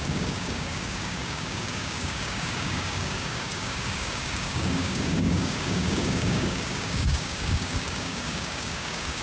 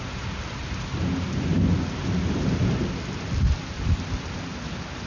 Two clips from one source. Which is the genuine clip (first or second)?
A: second